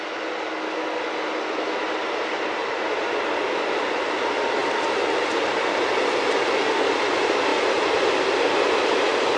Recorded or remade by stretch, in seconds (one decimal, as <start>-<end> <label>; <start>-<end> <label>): 0.0-9.4 recorded